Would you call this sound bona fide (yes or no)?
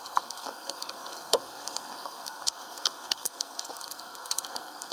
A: no